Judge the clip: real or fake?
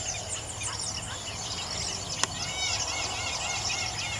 real